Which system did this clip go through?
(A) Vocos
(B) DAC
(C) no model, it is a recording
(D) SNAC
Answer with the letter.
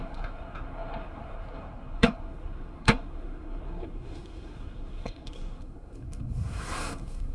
D